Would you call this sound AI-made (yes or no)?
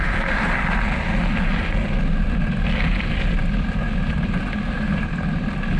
no